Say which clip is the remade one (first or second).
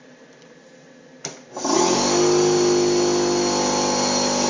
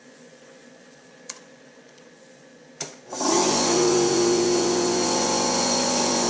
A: second